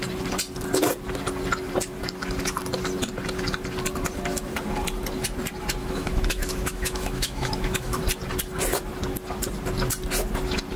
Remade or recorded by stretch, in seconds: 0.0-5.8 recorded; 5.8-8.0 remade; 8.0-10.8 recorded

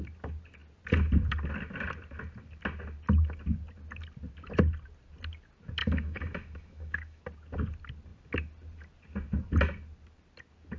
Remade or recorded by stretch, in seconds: 0.0-5.8 recorded; 5.8-7.2 remade; 7.2-10.8 recorded

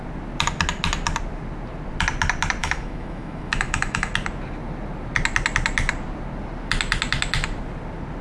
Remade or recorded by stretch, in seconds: 0.0-2.6 recorded; 2.6-4.1 remade; 4.1-8.2 recorded